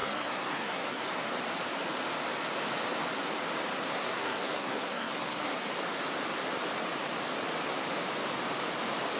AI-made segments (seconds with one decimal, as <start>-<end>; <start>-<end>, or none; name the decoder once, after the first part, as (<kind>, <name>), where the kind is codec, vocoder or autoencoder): 0.0-1.1 (codec, SNAC); 3.9-5.7